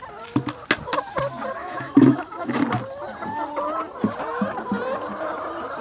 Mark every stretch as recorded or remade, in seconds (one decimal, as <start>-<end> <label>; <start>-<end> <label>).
0.0-1.6 recorded; 1.6-2.6 remade; 2.6-5.8 recorded